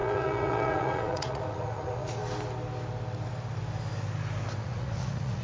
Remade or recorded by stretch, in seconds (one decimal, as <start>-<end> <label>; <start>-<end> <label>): 0.0-2.2 remade; 2.2-4.6 recorded; 4.6-5.4 remade